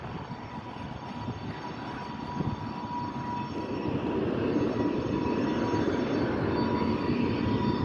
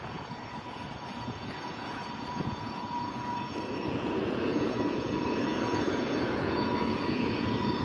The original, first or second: first